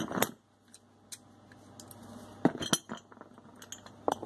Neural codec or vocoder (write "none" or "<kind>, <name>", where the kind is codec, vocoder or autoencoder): none